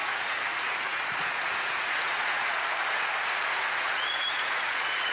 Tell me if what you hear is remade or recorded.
remade